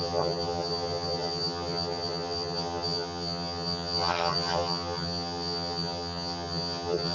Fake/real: fake